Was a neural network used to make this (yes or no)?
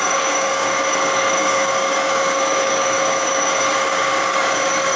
yes